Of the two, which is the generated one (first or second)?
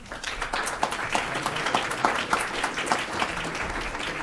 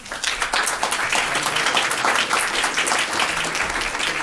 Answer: first